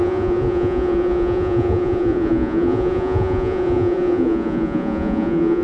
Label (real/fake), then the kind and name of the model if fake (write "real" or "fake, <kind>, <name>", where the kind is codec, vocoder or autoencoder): fake, vocoder, Vocos